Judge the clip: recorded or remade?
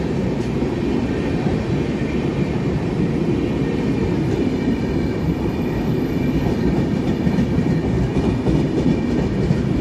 remade